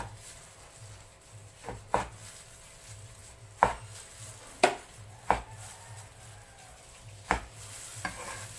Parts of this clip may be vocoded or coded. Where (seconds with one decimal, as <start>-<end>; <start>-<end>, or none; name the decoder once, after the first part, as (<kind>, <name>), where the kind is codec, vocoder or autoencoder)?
none